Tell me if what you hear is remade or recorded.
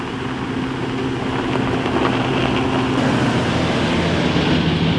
recorded